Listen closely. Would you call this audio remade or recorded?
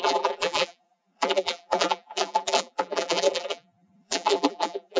remade